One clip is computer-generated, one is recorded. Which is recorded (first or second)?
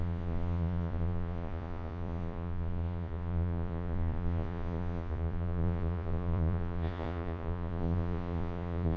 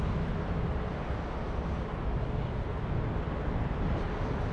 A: second